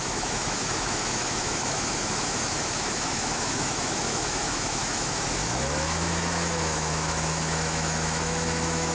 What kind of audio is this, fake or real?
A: fake